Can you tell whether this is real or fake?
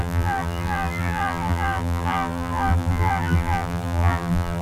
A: fake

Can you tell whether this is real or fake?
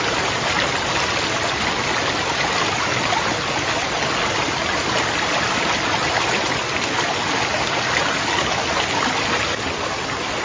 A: real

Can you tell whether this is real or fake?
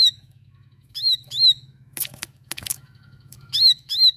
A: fake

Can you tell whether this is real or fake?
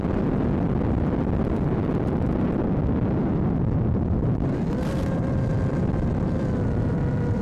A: fake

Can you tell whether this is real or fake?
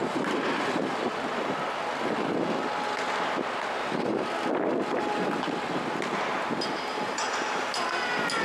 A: real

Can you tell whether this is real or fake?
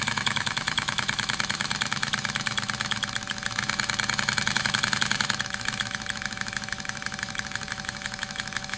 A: fake